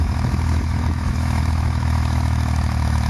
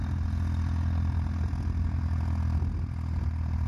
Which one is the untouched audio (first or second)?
second